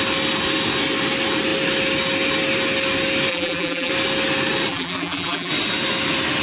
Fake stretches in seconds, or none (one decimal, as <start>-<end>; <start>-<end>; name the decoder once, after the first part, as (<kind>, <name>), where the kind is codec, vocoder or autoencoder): 3.3-3.9 (vocoder, BigVGAN v2); 4.7-5.5